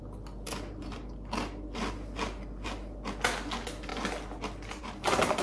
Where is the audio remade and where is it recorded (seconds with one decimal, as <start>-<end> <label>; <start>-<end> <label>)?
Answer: 0.0-5.4 recorded